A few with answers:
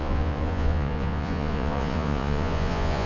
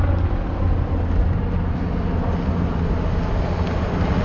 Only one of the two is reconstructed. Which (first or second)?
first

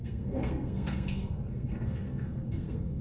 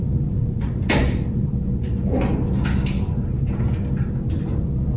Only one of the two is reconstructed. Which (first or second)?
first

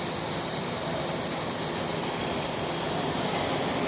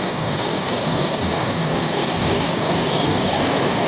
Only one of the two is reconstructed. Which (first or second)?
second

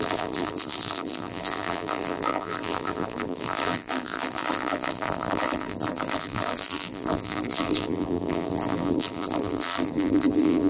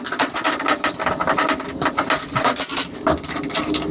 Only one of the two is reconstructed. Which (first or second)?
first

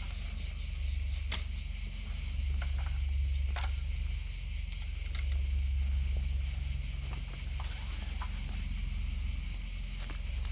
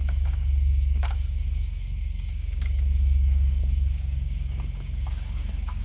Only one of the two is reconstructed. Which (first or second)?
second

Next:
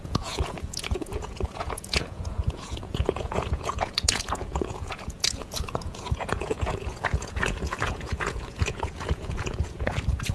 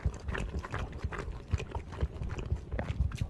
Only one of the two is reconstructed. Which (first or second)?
first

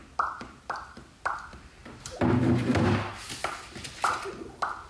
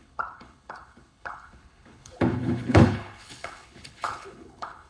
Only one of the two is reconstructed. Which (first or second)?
second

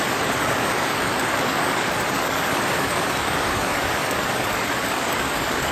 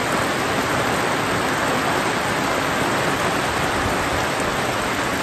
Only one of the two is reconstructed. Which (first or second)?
first